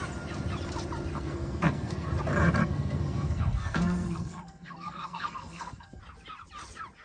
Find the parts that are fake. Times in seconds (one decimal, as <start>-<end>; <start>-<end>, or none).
1.1-2.2; 2.6-6.0